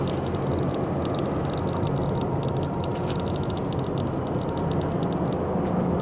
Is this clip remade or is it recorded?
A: recorded